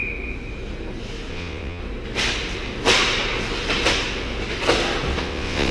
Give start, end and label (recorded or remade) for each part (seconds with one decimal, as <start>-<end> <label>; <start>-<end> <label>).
0.0-1.3 recorded; 1.3-1.8 remade; 1.8-5.2 recorded; 5.2-5.7 remade